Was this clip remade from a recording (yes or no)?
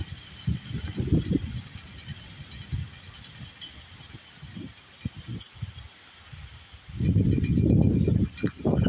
no